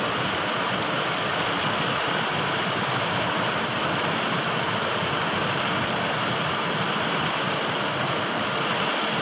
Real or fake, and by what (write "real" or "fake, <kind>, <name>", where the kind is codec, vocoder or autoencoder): real